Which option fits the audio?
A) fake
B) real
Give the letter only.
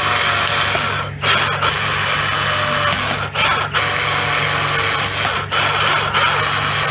B